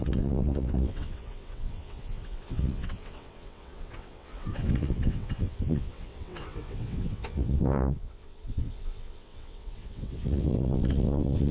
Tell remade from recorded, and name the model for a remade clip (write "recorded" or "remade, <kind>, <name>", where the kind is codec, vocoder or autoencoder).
remade, vocoder, WaveNeXt